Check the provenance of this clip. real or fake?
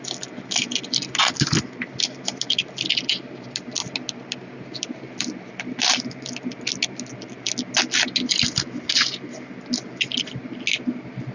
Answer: real